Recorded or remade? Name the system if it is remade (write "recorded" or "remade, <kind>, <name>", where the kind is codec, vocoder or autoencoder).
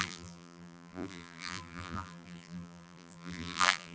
remade, vocoder, BigVGAN v2